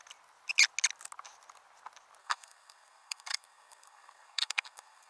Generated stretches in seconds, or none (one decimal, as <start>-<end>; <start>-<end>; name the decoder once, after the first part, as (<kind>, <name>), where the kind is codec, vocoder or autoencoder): 2.2-5.1 (codec, SNAC)